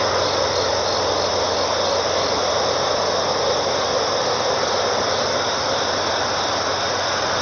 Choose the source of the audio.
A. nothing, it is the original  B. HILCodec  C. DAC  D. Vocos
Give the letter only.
A